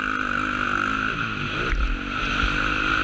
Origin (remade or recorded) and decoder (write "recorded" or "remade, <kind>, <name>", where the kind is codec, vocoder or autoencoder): recorded